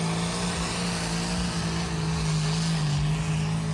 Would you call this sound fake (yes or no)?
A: no